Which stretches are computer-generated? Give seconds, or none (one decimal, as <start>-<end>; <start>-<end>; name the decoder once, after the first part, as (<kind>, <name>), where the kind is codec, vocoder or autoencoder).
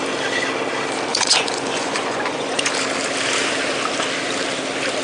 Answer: 1.1-2.7 (vocoder, Vocos)